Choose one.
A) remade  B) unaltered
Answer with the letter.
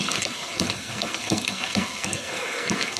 A